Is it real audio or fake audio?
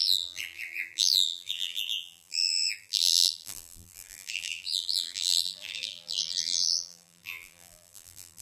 fake